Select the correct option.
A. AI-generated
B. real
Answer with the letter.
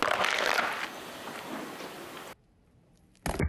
B